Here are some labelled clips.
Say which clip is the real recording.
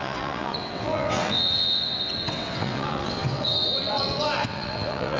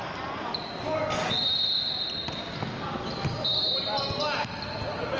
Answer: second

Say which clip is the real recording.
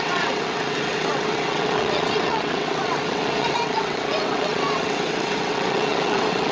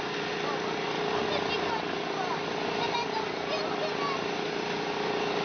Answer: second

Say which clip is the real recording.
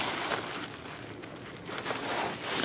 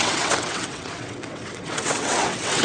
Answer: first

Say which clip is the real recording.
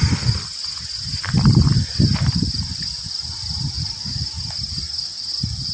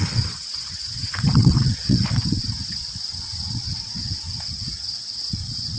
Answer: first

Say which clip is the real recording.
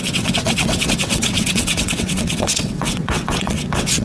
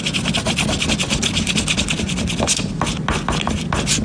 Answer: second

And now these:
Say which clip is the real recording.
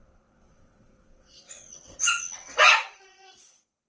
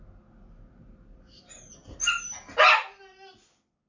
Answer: second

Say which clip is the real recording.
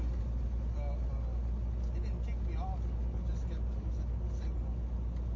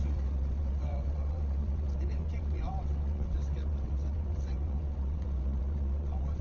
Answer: first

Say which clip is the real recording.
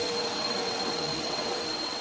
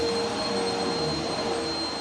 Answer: second